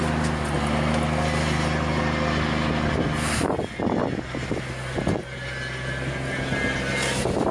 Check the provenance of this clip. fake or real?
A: real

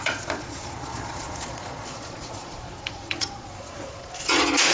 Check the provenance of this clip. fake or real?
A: fake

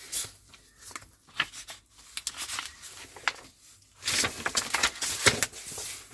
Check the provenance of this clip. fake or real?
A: real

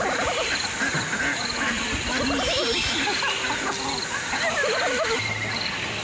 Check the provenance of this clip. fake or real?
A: real